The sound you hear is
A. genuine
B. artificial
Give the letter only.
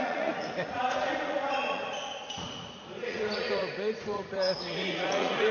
B